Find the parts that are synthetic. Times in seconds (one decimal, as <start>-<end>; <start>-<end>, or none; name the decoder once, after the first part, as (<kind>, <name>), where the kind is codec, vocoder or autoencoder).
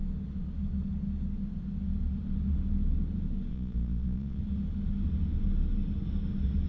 3.5-4.4 (vocoder, Vocos)